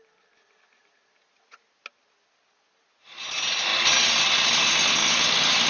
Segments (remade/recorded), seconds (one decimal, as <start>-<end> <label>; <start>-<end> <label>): 0.0-5.7 recorded